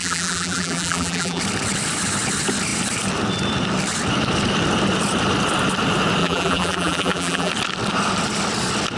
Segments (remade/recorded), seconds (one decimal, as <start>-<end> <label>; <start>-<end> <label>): 0.0-1.4 remade; 1.4-6.2 recorded; 6.2-7.5 remade; 7.5-9.0 recorded